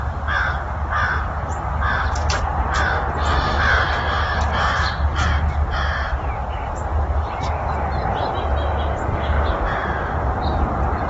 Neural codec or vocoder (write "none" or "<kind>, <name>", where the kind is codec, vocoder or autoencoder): none